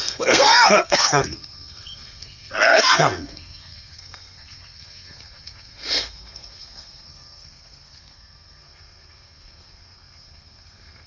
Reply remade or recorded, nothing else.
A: remade